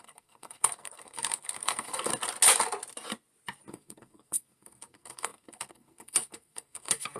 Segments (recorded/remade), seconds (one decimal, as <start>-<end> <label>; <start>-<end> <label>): 0.0-2.1 remade; 2.1-3.7 recorded; 3.7-7.2 remade